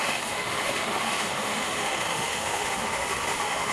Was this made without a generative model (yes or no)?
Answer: no